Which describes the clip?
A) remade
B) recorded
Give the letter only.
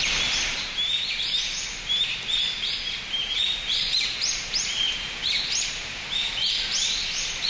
A